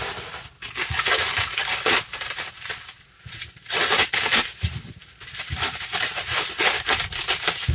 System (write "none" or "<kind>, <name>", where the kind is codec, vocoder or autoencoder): vocoder, BigVGAN v2